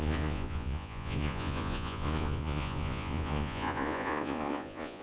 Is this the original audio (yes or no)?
no